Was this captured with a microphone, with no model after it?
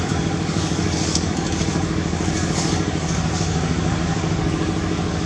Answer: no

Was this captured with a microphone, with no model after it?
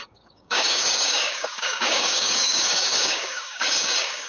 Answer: no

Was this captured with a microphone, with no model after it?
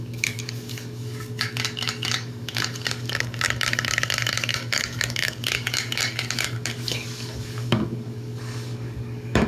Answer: no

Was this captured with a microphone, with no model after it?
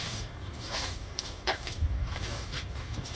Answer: no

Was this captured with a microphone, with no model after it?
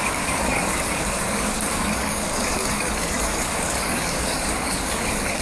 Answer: no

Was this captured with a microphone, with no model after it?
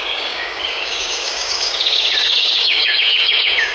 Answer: no